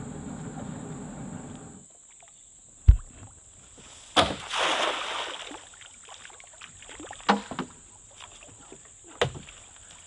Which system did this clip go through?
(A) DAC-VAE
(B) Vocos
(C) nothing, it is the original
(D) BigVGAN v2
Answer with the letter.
C